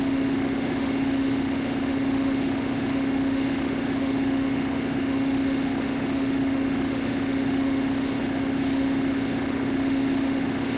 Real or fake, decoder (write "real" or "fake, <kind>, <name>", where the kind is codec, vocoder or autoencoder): fake, autoencoder, DAC-VAE